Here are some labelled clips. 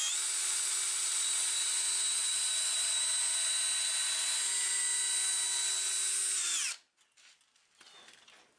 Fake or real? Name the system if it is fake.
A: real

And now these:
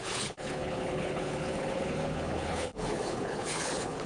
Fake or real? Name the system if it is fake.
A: fake, codec, HILCodec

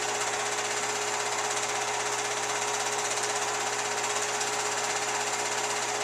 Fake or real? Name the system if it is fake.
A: real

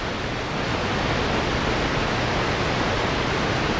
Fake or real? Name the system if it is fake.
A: real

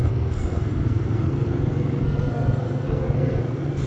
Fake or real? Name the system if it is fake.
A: fake, codec, SNAC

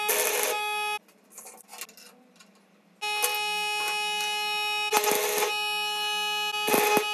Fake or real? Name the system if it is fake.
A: real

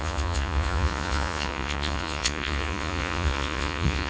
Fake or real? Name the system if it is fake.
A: fake, vocoder, Vocos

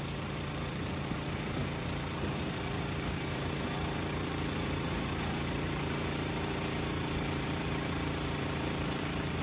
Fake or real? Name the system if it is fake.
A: fake, vocoder, BigVGAN v2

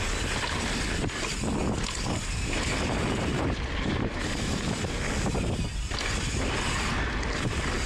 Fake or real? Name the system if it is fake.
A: real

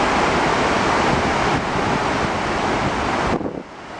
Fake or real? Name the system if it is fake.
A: real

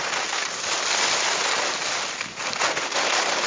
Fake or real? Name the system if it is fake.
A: real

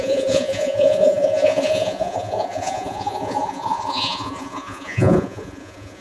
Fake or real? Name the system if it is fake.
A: fake, vocoder, Vocos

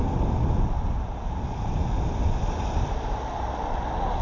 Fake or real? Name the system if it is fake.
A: real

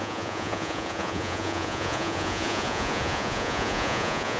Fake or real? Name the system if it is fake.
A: fake, vocoder, Vocos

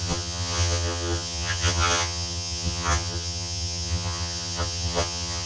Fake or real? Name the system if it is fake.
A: fake, vocoder, HiFi-GAN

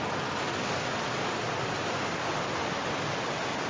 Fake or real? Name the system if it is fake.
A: real